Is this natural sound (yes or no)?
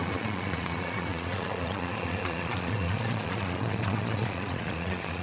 no